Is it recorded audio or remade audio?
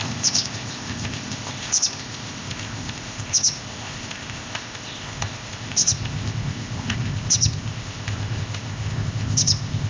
remade